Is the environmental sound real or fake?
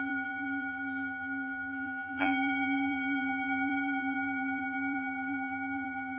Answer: fake